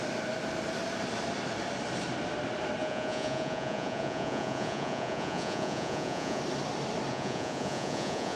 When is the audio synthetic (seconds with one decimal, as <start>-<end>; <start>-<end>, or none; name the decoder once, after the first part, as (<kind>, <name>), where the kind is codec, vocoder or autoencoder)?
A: 2.8-6.4 (vocoder, Vocos); 7.1-8.4